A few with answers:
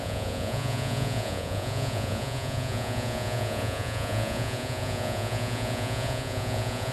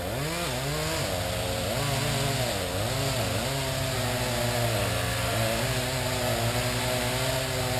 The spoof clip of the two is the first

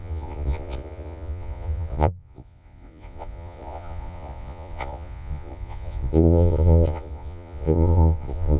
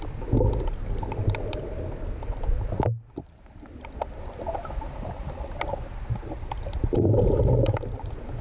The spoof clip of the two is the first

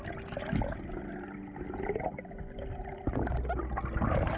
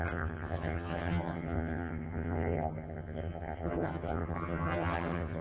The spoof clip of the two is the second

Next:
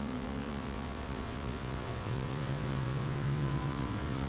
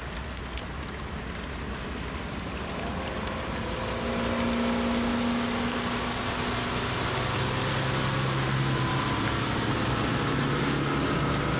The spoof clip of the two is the first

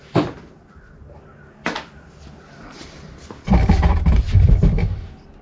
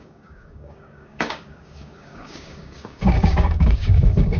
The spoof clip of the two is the second